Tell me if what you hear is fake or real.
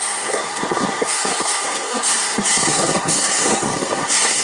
fake